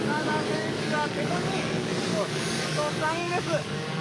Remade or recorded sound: remade